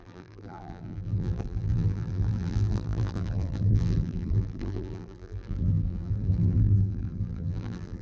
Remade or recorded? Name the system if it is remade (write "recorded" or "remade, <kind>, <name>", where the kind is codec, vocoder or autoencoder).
remade, vocoder, BigVGAN v2